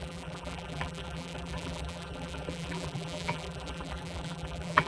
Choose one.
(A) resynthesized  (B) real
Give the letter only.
A